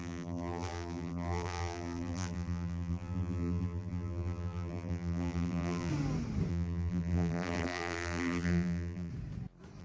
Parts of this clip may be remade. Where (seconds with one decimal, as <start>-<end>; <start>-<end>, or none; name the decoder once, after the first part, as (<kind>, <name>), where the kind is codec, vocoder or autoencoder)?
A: 0.0-5.9 (vocoder, BigVGAN v2); 6.5-9.1